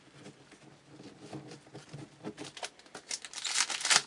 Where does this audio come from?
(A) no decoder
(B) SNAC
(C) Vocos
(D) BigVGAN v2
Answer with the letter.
A